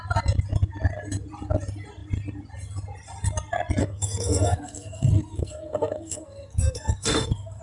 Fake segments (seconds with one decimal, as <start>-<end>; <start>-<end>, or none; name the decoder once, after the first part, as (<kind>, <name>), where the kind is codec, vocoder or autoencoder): 3.8-7.6 (codec, SNAC)